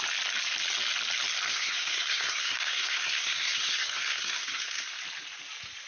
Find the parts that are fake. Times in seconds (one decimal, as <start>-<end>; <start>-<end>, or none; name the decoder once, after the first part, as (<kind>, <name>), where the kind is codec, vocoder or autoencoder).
1.5-5.0 (codec, SNAC)